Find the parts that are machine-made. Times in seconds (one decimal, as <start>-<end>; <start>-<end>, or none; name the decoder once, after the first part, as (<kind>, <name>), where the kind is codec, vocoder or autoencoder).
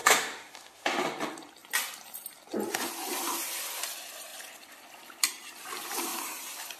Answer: 0.0-1.0 (autoencoder, DAC-VAE)